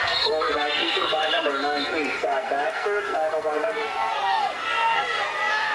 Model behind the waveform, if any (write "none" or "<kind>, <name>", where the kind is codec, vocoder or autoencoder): codec, SNAC